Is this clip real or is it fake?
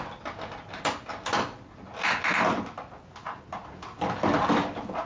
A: real